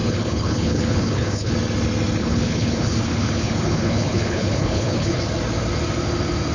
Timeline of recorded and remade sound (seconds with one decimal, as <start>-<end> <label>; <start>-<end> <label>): 0.0-1.5 remade; 1.5-2.2 recorded; 2.2-5.2 remade; 5.2-6.5 recorded